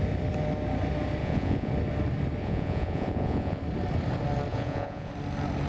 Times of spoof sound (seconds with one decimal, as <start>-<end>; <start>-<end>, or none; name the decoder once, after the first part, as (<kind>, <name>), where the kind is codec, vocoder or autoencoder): 1.2-1.7 (vocoder, Vocos); 2.4-3.6; 4.5-5.1